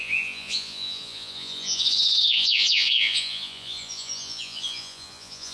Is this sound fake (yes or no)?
yes